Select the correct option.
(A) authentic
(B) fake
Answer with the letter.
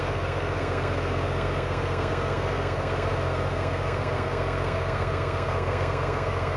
B